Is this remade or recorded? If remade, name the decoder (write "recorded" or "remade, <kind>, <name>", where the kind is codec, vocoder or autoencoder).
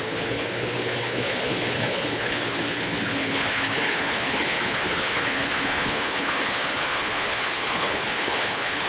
remade, codec, HILCodec